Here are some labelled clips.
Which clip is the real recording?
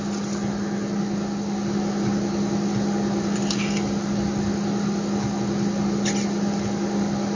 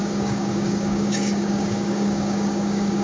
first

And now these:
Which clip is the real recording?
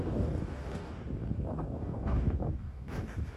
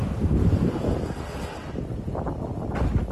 second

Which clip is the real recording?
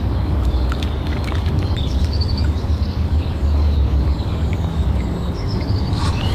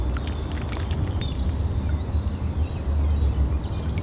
second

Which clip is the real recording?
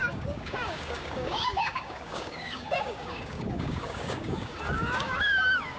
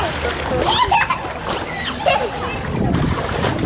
second